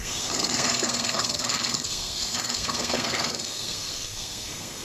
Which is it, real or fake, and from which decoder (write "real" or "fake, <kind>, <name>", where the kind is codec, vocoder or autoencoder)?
fake, codec, SNAC